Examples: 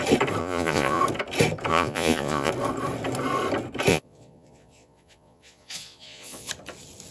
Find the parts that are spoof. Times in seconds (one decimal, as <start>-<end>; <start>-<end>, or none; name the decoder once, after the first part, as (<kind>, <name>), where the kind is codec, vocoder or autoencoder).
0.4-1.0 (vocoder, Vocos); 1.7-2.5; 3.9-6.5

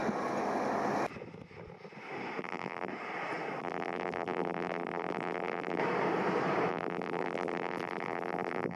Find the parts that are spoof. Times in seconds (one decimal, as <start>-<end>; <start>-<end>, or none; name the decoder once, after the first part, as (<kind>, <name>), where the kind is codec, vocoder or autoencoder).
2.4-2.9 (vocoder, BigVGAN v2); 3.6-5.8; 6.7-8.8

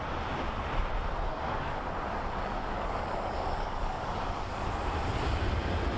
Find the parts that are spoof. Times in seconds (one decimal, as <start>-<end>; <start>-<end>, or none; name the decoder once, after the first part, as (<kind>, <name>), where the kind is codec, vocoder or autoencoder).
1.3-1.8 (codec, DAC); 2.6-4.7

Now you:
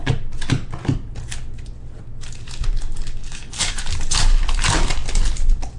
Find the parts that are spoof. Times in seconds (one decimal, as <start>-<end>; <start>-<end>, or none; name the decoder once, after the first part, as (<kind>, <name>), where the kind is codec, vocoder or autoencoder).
3.2-3.8 (codec, DAC)

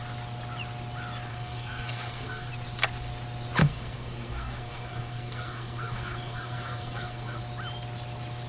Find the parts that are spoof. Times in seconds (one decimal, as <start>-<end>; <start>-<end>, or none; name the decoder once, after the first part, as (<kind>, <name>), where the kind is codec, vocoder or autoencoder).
1.3-2.5 (codec, SNAC); 3.6-7.4

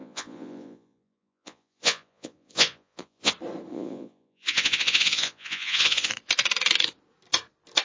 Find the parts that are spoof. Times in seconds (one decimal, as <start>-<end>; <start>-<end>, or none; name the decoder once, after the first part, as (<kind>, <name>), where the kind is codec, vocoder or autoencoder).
0.0-3.3 (vocoder, Vocos); 3.7-6.1

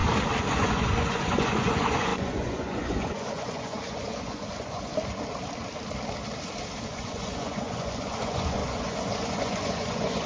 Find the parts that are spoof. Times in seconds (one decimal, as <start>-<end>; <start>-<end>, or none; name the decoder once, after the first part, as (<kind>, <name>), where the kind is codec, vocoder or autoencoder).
0.5-4.9 (vocoder, Vocos); 6.9-10.3

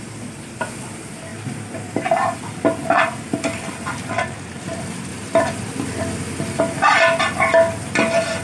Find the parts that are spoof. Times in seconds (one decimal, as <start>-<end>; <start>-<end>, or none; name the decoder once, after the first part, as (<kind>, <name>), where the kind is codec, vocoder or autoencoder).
5.1-6.6 (vocoder, BigVGAN v2)